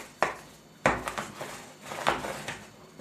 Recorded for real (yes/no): yes